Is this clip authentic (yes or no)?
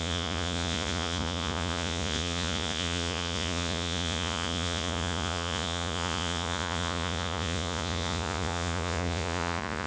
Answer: no